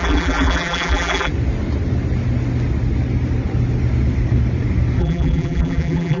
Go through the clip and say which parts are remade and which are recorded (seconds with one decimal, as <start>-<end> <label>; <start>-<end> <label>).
0.0-1.3 remade; 1.3-5.0 recorded; 5.0-6.2 remade